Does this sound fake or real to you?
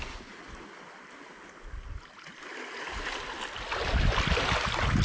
real